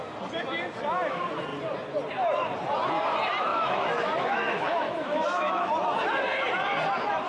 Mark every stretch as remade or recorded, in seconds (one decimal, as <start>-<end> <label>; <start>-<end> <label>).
0.0-3.5 recorded; 3.5-5.7 remade; 5.7-7.3 recorded

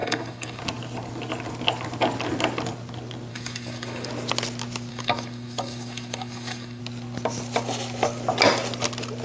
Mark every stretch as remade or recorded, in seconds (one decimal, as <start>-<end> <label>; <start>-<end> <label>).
0.0-0.6 remade; 0.6-3.3 recorded; 3.3-4.1 remade; 4.1-4.9 recorded; 4.9-6.8 remade; 6.8-9.2 recorded

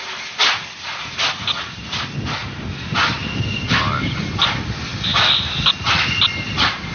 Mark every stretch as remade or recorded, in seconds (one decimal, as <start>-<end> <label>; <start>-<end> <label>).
0.0-6.9 recorded